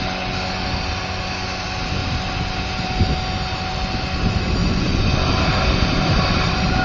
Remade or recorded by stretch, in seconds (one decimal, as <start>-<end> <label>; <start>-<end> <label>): 0.0-4.6 recorded; 4.6-5.3 remade; 5.3-6.8 recorded